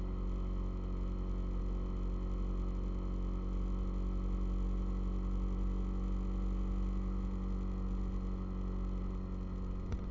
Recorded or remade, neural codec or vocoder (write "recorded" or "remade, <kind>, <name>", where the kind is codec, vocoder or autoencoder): recorded